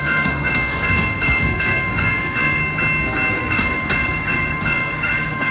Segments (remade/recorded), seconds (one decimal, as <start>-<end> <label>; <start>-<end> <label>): 0.0-2.6 remade; 2.6-3.3 recorded; 3.3-5.5 remade